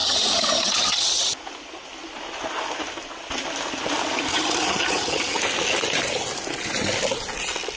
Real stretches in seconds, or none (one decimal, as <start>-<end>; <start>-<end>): 1.1-4.3; 5.4-7.8

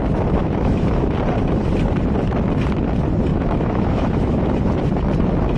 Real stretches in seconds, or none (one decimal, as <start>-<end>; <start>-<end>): 0.0-0.4; 1.0-3.3; 4.4-5.6

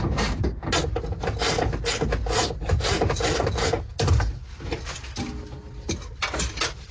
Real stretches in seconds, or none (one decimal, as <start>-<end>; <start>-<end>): 0.0-6.9

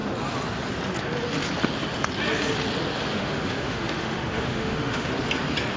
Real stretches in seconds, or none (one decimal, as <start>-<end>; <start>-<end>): 0.0-3.1; 5.1-5.8

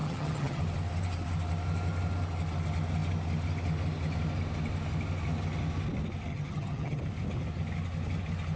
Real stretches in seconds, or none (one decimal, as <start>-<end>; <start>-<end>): 0.6-6.3; 7.0-8.6

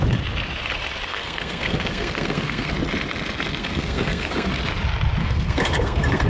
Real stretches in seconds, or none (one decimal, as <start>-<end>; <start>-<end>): 0.0-1.1; 2.7-3.6; 4.5-5.2

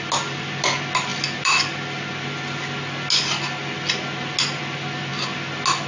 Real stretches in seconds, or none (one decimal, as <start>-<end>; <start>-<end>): 0.0-5.9